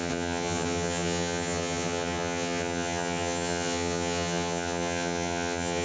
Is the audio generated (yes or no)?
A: yes